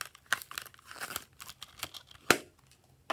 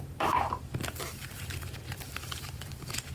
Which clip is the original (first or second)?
first